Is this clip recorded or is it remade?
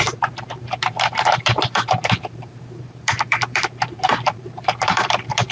remade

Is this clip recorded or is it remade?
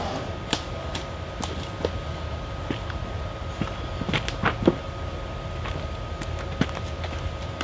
recorded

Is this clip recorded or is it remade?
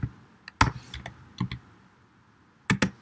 recorded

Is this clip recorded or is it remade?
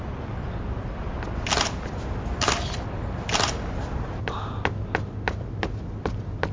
recorded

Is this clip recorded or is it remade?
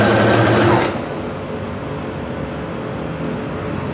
recorded